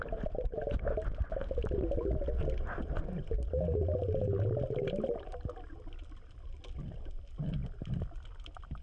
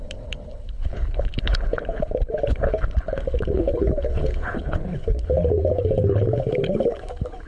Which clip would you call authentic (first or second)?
first